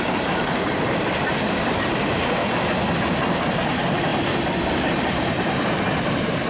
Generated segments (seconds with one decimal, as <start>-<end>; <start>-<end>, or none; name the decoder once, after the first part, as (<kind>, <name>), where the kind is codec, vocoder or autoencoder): 0.0-2.4 (vocoder, BigVGAN v2); 3.5-4.1; 4.7-6.5